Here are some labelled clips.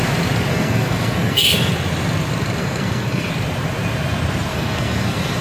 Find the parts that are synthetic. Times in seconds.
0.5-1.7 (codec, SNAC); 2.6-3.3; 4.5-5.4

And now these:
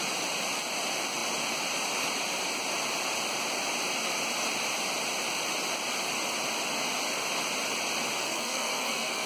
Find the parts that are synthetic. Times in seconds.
8.2-9.3 (codec, SNAC)

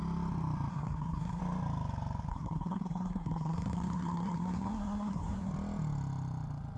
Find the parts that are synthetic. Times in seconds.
0.7-1.4 (codec, SNAC); 2.3-5.5